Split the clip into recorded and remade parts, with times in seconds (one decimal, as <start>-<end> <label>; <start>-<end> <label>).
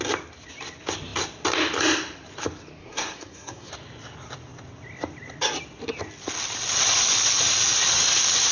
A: 0.0-2.8 recorded; 2.8-3.7 remade; 3.7-8.5 recorded